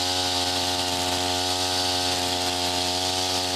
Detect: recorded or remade recorded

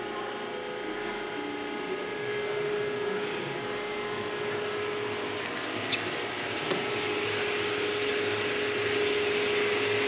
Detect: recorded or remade recorded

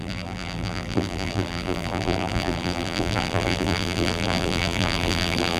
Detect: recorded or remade remade